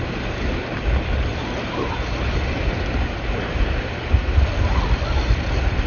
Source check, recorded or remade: recorded